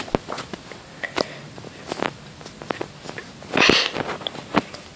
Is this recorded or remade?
recorded